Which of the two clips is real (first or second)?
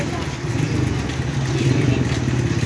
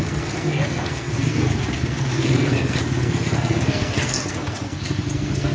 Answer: first